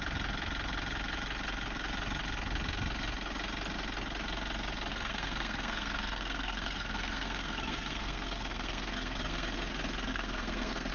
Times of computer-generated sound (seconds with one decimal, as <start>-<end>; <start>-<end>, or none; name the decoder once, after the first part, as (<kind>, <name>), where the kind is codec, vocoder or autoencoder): 4.9-9.7 (codec, SNAC); 10.1-10.9